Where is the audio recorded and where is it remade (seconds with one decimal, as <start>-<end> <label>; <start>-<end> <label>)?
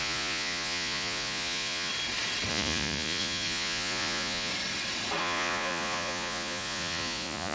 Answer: 0.0-1.9 remade; 1.9-2.5 recorded; 2.5-4.5 remade; 4.5-5.2 recorded; 5.2-7.5 remade